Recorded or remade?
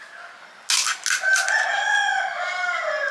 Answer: recorded